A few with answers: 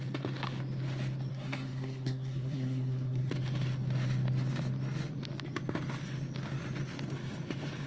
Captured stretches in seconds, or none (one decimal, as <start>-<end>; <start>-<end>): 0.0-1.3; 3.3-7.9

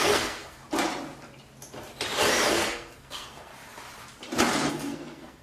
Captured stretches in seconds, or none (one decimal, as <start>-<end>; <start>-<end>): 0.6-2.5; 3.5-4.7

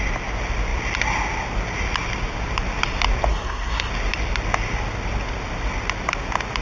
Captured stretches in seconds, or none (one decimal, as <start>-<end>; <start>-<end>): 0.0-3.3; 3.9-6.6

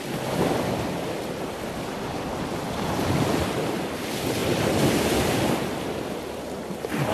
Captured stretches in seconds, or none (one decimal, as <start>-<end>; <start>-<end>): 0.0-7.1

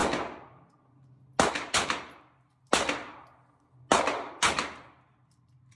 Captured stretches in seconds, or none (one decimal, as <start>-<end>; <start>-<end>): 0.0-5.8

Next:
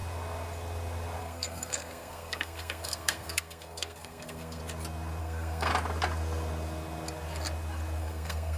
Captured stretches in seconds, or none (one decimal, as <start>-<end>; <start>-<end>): 0.0-1.2; 4.6-5.2; 5.7-8.0

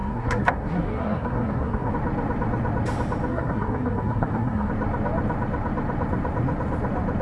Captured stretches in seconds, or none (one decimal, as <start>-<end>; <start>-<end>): 1.9-3.3; 4.7-7.2

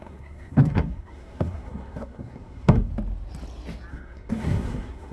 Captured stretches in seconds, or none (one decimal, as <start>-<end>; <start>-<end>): 2.9-3.9